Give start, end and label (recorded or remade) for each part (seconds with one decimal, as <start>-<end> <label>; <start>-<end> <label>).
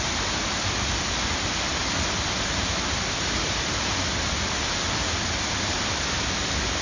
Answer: 0.0-6.8 recorded